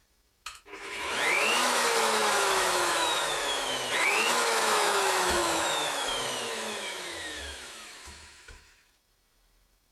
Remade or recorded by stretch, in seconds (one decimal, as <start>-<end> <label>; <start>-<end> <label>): 0.0-9.9 remade